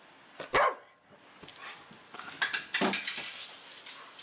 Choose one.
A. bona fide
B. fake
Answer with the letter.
A